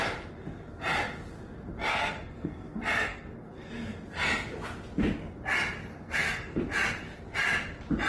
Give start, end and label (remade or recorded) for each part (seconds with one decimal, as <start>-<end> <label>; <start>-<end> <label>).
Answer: 0.0-1.9 recorded; 1.9-3.7 remade; 3.7-5.9 recorded; 5.9-6.6 remade; 6.6-8.1 recorded